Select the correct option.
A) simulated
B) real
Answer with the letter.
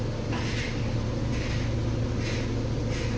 B